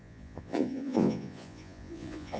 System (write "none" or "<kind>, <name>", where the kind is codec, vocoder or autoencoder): vocoder, Vocos